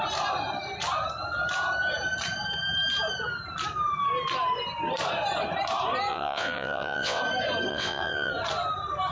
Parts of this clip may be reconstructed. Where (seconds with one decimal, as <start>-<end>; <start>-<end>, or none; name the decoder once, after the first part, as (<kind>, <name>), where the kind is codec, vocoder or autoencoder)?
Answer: 6.1-7.2 (vocoder, WaveNeXt); 7.7-8.3